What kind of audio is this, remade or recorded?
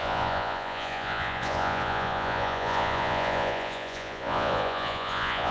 remade